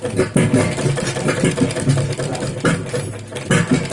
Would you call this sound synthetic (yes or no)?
no